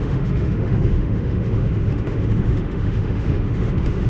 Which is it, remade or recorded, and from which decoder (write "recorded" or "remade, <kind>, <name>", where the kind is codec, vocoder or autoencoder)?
remade, autoencoder, DAC-VAE